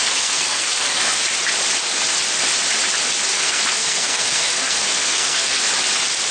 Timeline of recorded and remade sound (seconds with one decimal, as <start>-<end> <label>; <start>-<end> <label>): 0.0-1.2 remade; 1.2-3.3 recorded; 3.3-5.6 remade; 5.6-6.3 recorded